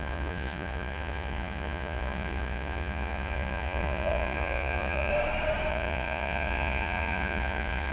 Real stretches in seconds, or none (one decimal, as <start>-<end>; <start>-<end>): 5.1-5.7